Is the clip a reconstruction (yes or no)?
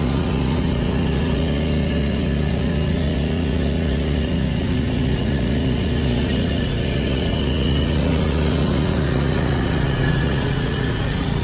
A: yes